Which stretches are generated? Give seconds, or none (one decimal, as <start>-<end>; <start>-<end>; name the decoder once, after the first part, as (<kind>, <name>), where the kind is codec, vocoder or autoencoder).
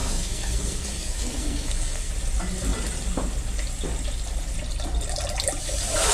0.0-2.1 (codec, SNAC)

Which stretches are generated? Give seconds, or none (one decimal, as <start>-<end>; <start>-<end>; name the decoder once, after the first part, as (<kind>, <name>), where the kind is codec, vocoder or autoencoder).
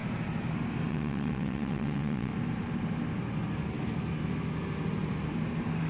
0.9-2.3 (vocoder, WaveNeXt)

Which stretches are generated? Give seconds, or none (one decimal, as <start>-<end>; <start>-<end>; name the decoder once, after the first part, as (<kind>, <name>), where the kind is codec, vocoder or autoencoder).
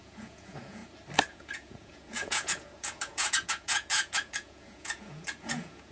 0.0-0.8 (vocoder, Vocos); 1.3-5.9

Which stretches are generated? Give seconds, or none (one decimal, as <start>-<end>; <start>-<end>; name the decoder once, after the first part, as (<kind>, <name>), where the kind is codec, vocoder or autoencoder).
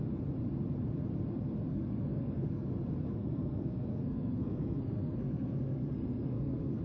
1.7-2.7 (codec, SNAC); 3.1-6.8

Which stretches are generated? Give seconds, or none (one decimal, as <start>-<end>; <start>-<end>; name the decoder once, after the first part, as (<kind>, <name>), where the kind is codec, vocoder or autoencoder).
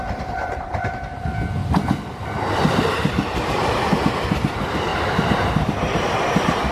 0.0-1.6 (vocoder, BigVGAN v2); 2.5-6.7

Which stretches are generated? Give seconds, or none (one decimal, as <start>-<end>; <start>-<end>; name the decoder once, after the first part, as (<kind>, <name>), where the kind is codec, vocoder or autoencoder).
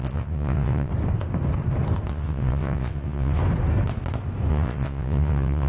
0.0-0.9 (vocoder, WaveNeXt); 2.1-3.4; 4.5-5.7